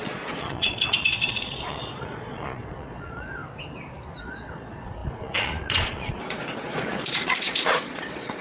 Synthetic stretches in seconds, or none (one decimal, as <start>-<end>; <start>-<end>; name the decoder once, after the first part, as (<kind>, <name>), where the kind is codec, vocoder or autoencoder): 0.0-3.4 (vocoder, Vocos); 4.2-8.4